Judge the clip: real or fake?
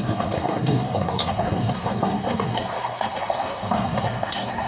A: fake